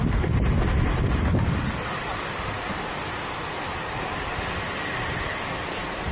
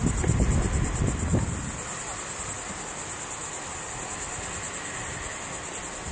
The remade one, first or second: first